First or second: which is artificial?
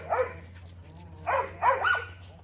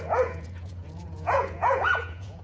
second